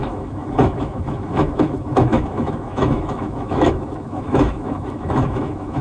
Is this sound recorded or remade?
remade